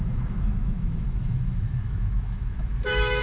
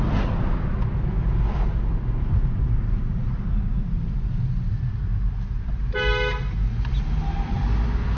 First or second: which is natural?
second